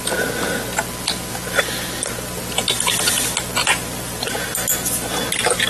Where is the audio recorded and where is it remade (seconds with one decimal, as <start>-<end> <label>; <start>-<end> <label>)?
0.0-5.7 recorded